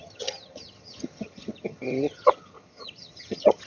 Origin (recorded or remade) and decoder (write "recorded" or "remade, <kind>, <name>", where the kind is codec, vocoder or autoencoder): remade, vocoder, HiFi-GAN